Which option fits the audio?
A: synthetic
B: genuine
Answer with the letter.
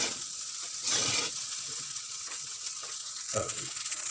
A